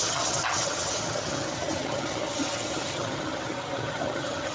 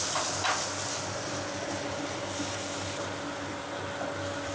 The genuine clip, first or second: second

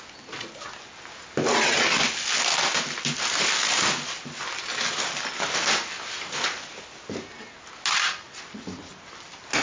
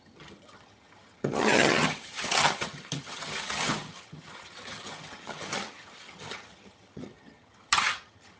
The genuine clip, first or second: first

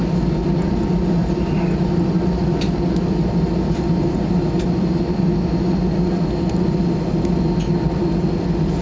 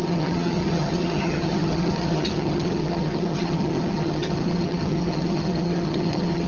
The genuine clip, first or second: first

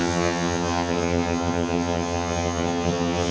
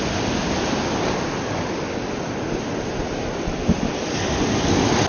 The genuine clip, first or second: second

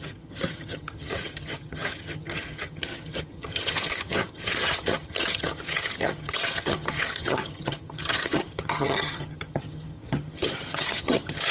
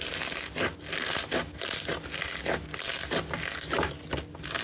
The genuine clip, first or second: second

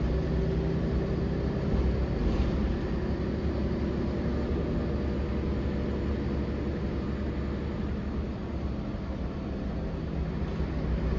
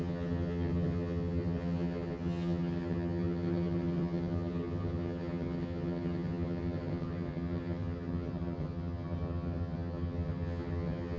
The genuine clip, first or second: first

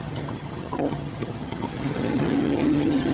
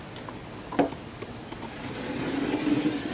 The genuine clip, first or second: second